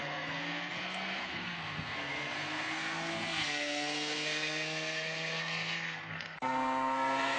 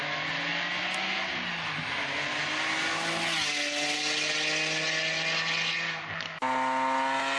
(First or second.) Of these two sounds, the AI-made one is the first